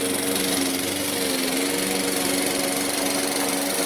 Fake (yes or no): no